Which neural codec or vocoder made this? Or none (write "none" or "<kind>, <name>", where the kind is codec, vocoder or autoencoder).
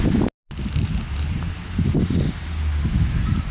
none